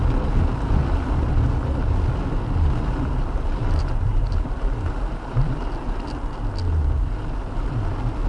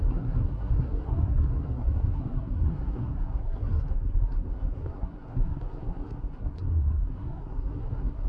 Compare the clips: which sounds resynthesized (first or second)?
second